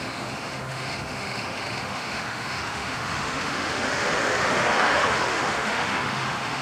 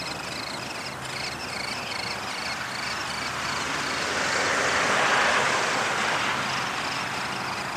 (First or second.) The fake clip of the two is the first